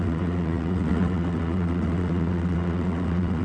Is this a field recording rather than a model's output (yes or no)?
no